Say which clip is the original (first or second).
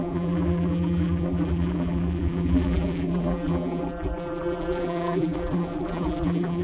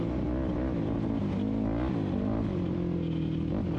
second